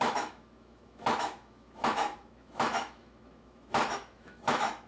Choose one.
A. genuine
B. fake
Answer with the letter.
B